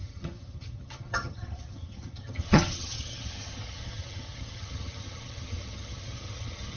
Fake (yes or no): yes